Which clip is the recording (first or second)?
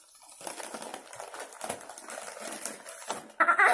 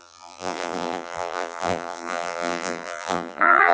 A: first